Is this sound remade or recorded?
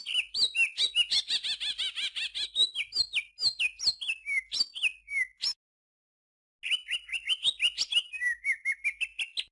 recorded